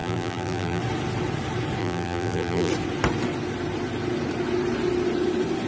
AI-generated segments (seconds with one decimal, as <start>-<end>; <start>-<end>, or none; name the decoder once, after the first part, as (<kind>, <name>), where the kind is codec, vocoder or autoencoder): 0.0-0.8 (vocoder, BigVGAN v2); 1.8-2.7